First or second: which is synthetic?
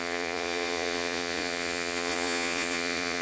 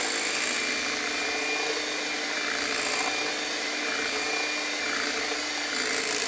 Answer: first